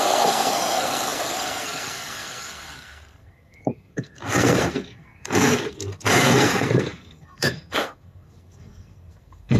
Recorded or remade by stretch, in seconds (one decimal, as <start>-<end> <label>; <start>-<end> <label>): 0.0-9.6 remade